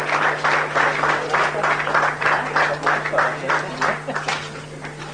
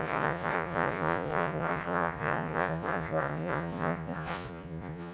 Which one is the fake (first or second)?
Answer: second